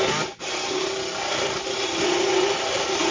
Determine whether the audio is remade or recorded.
recorded